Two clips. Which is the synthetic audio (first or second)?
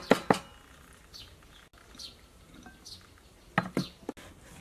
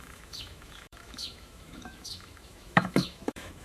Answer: second